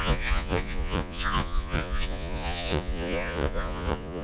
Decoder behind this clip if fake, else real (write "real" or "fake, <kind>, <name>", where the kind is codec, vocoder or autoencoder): fake, vocoder, Vocos